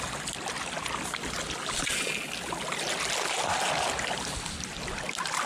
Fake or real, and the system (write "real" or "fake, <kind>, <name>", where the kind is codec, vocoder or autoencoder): real